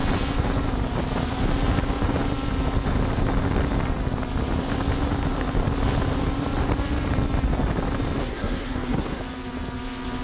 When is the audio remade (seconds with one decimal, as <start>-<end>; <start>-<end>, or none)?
8.2-9.2

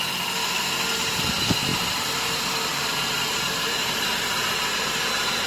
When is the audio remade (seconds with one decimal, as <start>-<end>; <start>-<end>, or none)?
1.7-5.0

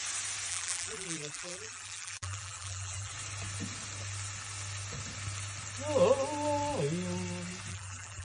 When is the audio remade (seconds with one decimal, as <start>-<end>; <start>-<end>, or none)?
0.5-3.1; 7.7-8.2

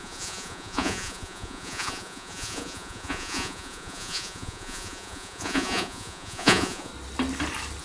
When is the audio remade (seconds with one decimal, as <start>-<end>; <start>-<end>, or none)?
0.0-6.9